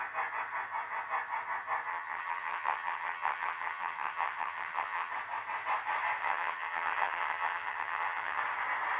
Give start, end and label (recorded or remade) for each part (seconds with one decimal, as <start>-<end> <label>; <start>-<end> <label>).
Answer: 0.0-1.9 recorded; 1.9-5.1 remade; 5.1-6.2 recorded; 6.2-8.4 remade; 8.4-9.0 recorded